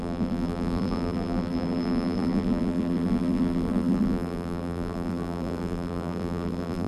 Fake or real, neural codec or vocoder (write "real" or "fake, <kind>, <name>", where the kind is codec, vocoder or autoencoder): fake, vocoder, BigVGAN v2